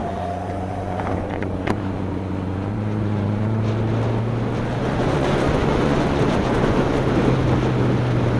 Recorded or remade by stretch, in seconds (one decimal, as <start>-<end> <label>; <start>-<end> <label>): 0.0-3.6 remade; 3.6-4.8 recorded; 4.8-7.0 remade; 7.0-8.4 recorded